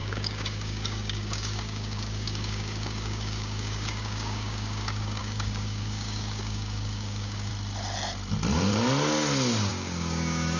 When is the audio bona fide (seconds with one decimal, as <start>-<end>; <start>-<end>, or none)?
7.5-9.7